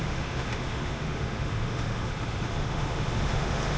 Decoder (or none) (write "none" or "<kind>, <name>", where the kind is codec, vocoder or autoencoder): autoencoder, DAC-VAE